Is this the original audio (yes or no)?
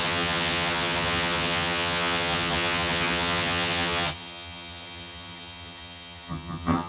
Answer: no